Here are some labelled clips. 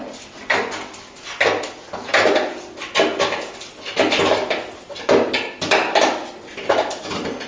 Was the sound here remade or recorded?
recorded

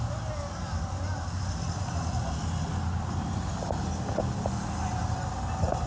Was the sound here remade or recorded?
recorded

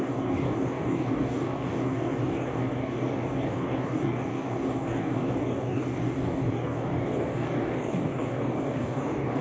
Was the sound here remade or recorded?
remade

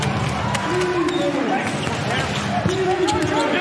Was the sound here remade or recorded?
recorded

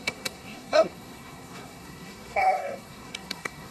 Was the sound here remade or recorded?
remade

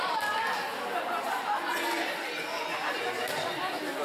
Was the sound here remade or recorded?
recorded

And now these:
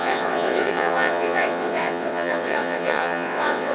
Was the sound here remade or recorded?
remade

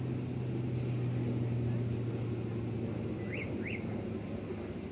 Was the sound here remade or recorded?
recorded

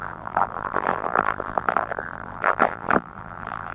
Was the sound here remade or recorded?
remade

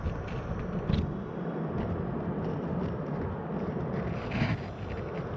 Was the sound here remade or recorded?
recorded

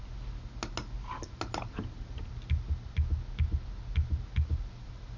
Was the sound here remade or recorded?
recorded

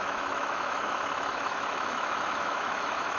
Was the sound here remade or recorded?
remade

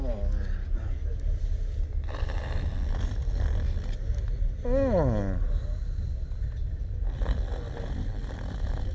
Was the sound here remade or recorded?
recorded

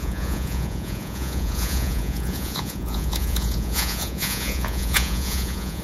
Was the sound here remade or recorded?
remade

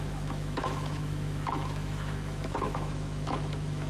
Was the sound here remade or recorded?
remade